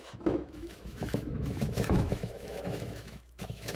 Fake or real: fake